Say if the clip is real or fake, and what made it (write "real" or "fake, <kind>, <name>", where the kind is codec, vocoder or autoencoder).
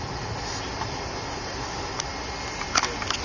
real